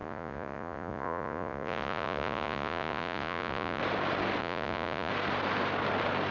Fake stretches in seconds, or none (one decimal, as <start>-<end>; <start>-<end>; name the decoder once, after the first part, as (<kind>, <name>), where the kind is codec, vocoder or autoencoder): 0.0-3.8 (vocoder, Vocos); 4.4-5.1